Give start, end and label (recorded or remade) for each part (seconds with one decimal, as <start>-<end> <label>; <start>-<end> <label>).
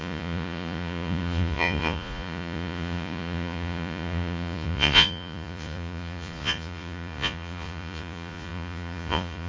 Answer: 0.0-9.5 remade